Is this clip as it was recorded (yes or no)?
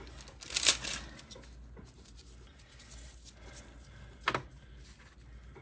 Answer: yes